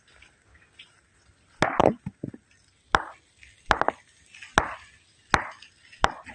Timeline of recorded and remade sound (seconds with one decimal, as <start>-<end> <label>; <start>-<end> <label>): 0.0-6.3 recorded